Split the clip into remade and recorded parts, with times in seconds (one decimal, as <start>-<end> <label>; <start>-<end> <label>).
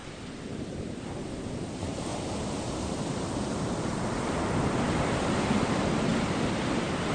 0.0-7.1 recorded